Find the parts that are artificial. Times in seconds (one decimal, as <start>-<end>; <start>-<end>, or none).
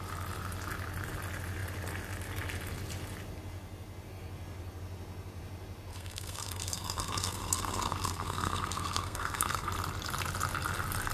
5.9-9.7